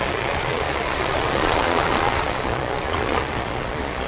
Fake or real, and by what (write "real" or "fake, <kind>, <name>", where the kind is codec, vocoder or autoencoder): fake, vocoder, Vocos